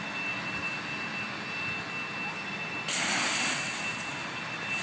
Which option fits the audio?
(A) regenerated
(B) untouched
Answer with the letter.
B